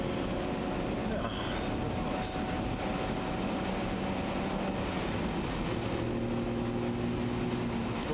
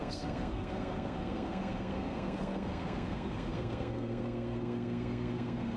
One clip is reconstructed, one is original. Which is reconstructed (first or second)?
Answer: second